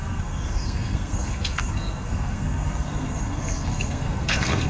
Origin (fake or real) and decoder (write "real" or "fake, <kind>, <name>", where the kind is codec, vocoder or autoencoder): fake, codec, SNAC